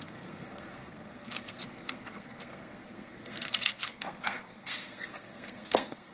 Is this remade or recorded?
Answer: remade